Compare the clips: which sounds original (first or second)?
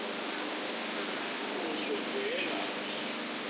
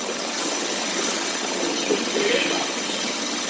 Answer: first